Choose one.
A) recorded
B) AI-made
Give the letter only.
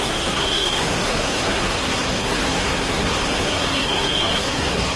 B